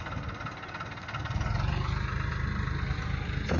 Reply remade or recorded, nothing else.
recorded